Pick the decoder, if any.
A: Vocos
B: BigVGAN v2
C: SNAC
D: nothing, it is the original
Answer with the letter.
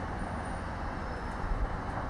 A